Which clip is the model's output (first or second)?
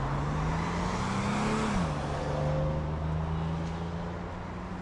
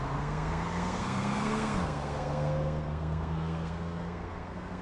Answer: second